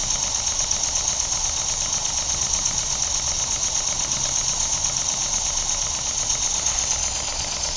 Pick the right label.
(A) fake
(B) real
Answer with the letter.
B